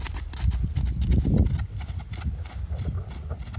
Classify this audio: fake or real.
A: real